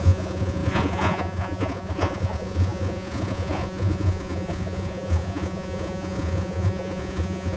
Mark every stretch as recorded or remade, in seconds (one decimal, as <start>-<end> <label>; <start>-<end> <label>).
0.0-7.6 remade